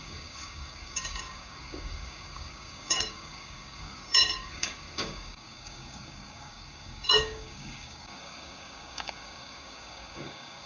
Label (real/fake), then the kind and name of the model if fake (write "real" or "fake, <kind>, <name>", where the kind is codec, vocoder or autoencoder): fake, codec, DAC